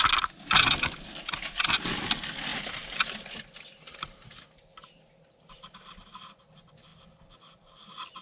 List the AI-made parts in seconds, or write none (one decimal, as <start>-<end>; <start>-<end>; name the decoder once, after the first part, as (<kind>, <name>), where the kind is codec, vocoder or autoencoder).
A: none